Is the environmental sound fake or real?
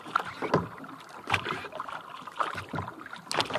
real